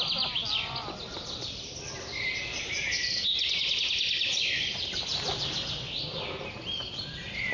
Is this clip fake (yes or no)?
no